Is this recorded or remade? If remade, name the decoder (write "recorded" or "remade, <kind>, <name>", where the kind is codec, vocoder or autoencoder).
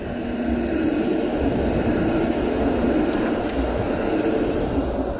recorded